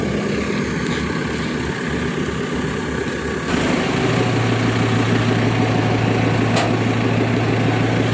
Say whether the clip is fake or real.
real